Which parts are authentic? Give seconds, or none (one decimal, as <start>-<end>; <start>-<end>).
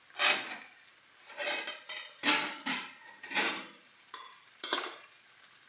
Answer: 0.0-1.4; 4.8-5.7